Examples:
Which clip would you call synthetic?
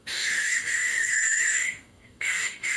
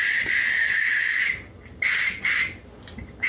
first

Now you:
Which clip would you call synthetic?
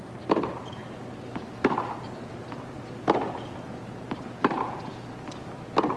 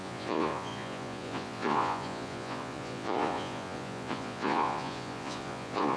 second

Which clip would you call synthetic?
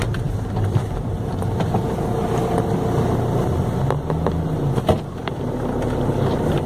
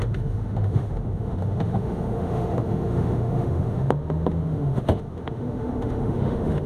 second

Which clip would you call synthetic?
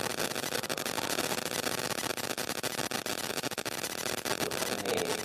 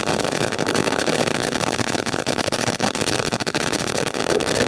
second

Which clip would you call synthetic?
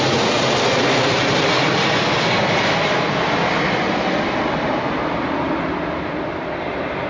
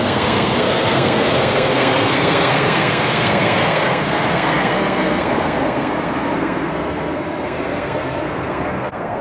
second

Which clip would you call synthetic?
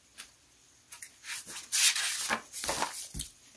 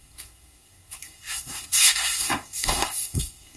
second